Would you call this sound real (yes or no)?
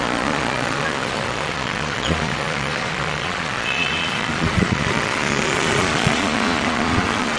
no